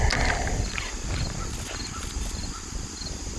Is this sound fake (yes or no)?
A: no